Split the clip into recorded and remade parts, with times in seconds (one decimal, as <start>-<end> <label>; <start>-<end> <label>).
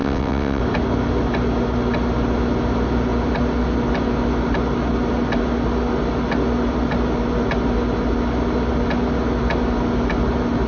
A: 0.0-0.6 remade; 0.6-10.7 recorded